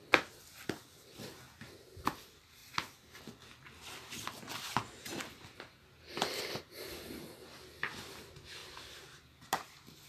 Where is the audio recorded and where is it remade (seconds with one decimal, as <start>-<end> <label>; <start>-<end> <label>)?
0.0-10.1 recorded